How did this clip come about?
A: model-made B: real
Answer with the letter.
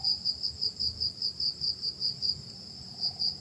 A